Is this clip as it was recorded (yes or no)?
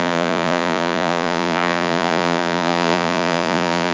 no